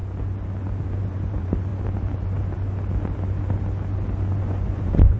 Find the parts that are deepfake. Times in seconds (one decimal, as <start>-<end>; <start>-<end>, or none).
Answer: 1.0-1.7; 4.4-5.2